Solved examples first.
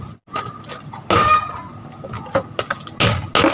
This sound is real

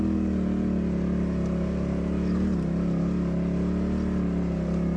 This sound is real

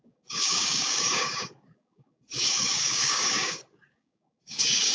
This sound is fake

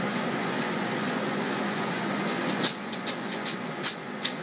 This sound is fake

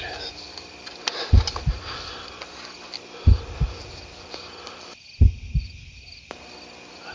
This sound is real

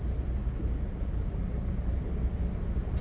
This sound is real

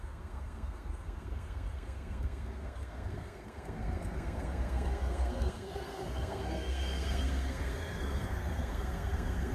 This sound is fake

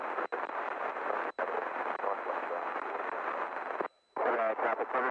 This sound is fake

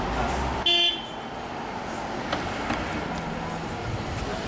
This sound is real